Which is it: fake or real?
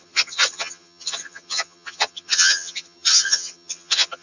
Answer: fake